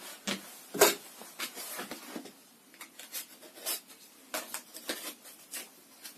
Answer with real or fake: real